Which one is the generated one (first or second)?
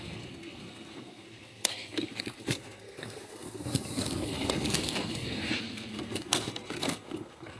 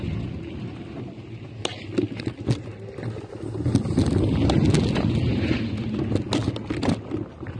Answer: first